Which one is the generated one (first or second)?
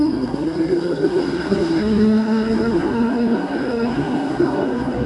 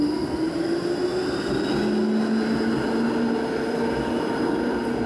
first